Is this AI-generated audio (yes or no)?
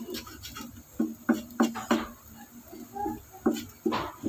no